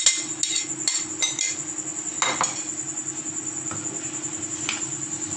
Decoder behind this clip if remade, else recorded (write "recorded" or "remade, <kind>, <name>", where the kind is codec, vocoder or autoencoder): recorded